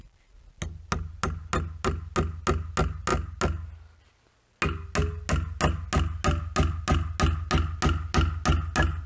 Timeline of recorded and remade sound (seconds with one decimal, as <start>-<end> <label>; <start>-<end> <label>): 0.0-9.1 recorded